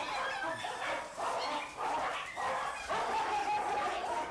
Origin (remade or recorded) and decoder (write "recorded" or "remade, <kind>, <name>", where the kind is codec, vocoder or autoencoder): recorded